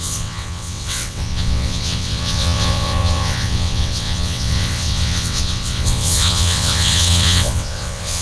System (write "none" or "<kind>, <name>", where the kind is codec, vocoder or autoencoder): vocoder, WaveNeXt